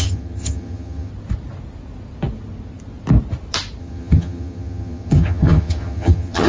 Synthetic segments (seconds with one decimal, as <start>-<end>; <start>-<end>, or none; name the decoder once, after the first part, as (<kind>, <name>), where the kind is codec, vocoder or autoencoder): 0.0-1.1 (vocoder, HiFi-GAN); 3.8-6.5